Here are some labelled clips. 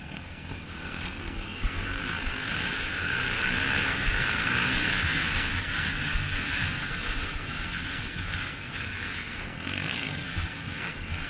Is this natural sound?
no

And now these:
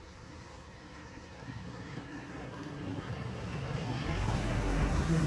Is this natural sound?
no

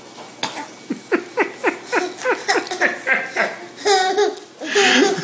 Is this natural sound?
yes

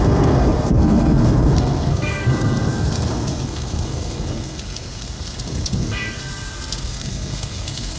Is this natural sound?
no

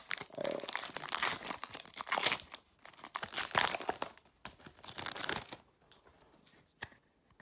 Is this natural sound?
yes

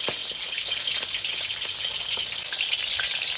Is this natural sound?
yes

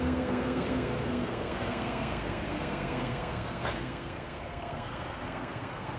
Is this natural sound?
no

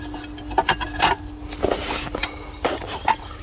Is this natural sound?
yes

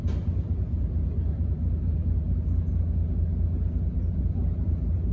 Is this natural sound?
yes